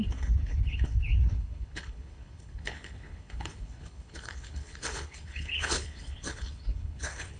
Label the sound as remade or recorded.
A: remade